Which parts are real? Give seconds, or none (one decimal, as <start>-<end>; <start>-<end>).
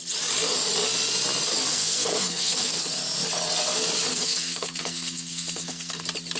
0.0-1.7; 2.8-4.1; 6.0-6.4